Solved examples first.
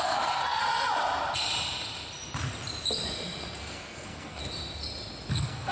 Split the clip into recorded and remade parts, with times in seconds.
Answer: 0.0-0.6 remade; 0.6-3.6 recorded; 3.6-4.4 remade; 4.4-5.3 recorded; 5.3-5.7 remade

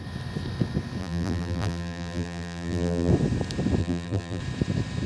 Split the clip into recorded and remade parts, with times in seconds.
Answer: 0.0-1.0 recorded; 1.0-3.1 remade; 3.1-3.8 recorded; 3.8-4.4 remade; 4.4-5.1 recorded

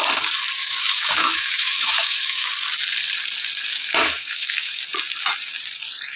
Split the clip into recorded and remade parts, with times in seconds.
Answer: 0.0-0.6 recorded; 0.6-2.5 remade; 2.5-3.7 recorded; 3.7-4.8 remade; 4.8-6.2 recorded

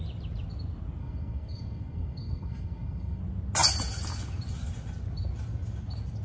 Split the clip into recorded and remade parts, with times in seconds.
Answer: 0.0-1.0 recorded; 1.0-3.2 remade; 3.2-6.2 recorded

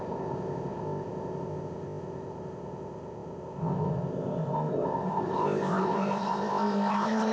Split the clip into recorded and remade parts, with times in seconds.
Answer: 0.0-7.3 remade

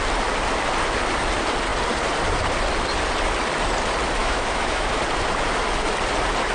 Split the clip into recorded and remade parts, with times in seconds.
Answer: 0.0-4.2 recorded; 4.2-5.0 remade; 5.0-6.5 recorded